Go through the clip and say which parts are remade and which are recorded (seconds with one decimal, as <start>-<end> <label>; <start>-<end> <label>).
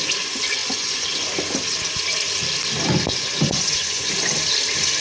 0.0-0.6 recorded; 0.6-1.3 remade; 1.3-3.1 recorded; 3.1-4.1 remade; 4.1-5.0 recorded